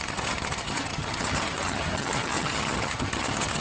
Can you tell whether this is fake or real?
fake